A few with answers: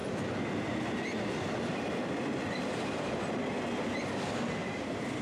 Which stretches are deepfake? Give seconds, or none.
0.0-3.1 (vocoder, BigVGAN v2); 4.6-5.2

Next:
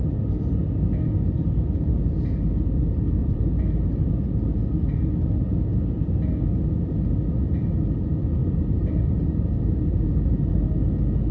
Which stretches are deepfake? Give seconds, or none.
3.2-4.1 (vocoder, BigVGAN v2); 8.4-10.6

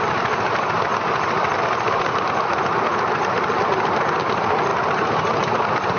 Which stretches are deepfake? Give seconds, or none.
0.0-0.9 (vocoder, BigVGAN v2); 1.5-4.7

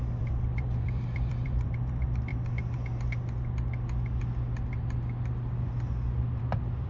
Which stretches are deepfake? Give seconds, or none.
0.0-2.3 (vocoder, BigVGAN v2); 6.4-6.9